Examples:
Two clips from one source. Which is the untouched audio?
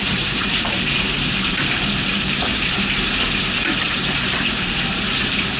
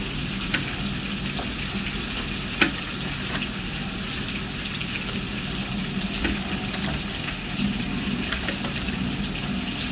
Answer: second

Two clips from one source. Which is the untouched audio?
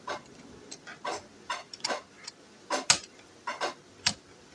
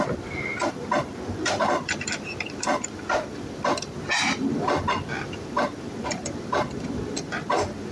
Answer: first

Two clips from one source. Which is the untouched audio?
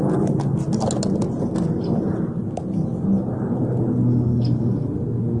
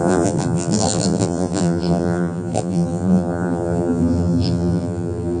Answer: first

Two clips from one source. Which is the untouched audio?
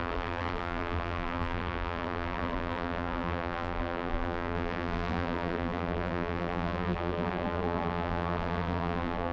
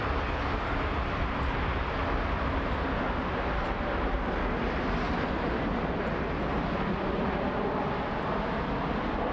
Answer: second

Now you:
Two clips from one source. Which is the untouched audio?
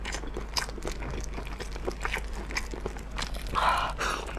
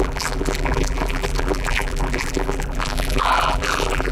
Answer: first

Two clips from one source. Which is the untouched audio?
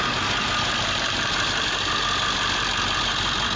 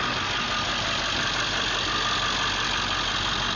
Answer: second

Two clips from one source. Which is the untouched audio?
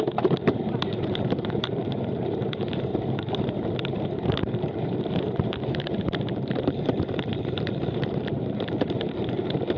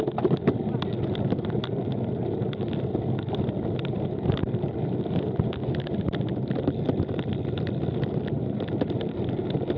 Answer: second